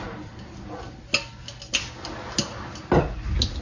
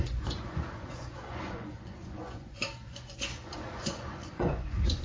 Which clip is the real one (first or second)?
first